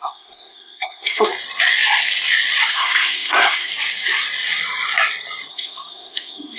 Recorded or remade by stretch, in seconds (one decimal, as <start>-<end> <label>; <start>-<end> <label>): 0.0-1.3 remade; 1.3-2.7 recorded; 2.7-3.7 remade; 3.7-5.5 recorded; 5.5-6.6 remade